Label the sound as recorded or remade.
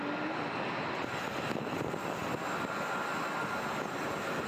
recorded